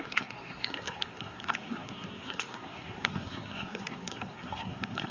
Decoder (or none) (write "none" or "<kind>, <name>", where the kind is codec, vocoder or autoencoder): codec, SNAC